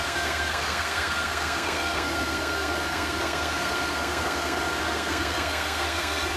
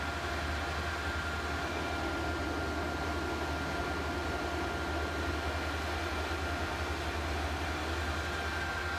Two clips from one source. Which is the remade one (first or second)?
first